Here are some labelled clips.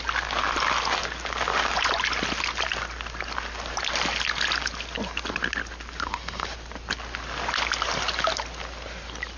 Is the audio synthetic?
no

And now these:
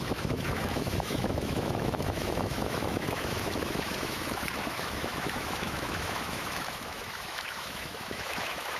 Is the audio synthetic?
yes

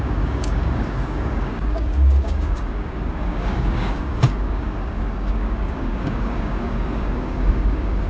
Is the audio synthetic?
yes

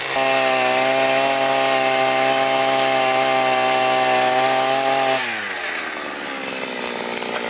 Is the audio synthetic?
no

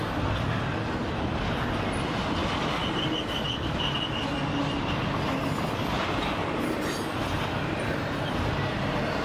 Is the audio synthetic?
no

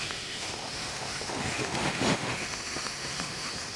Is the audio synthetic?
yes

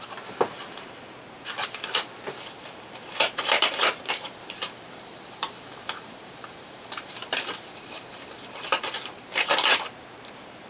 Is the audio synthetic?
yes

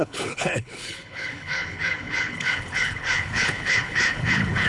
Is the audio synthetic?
yes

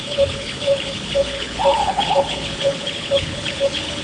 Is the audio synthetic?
yes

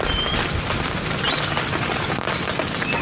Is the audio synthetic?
no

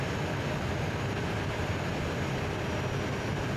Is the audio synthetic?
no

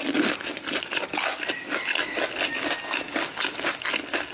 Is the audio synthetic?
no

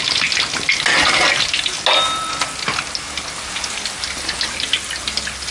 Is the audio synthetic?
no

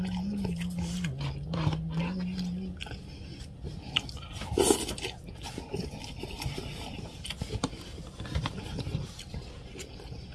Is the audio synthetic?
no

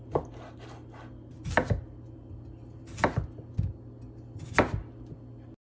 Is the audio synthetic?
no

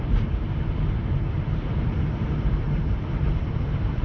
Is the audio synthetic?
yes